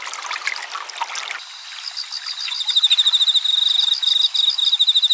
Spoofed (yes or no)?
no